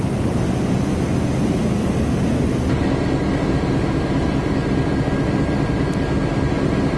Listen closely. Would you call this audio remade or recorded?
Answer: recorded